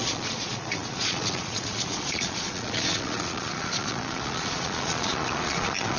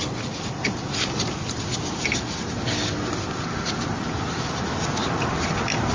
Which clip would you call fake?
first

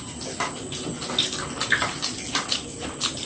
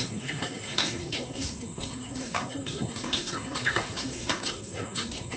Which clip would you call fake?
second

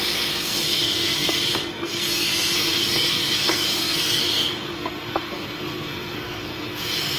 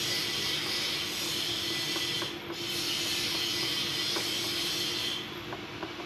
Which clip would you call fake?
first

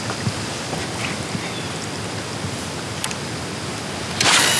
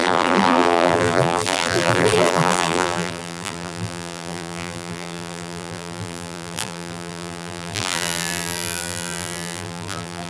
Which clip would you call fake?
second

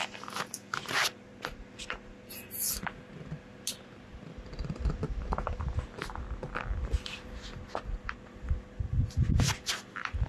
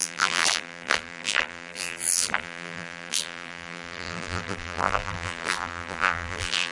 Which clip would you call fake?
second